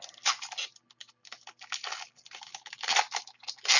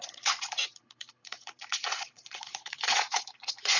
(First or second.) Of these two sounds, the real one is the first